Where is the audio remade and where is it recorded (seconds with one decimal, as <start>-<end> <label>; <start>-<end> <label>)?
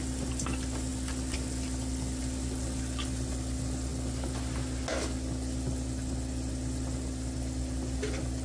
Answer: 0.0-8.4 recorded